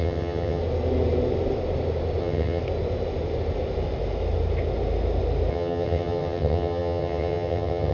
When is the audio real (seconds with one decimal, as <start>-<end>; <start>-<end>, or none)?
0.6-2.2; 2.6-5.5